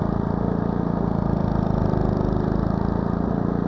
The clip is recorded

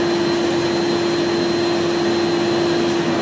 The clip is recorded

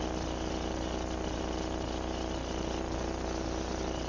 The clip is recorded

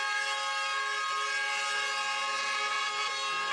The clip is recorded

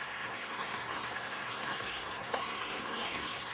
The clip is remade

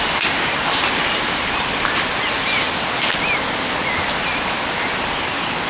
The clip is recorded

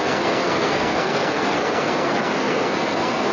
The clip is remade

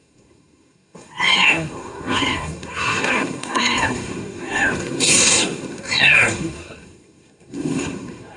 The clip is remade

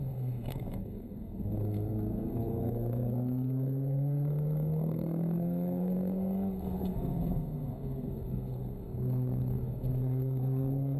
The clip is remade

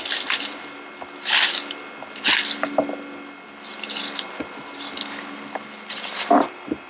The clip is recorded